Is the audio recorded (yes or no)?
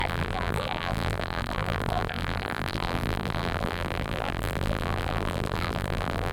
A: no